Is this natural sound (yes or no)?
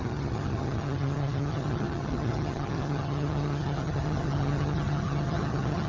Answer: no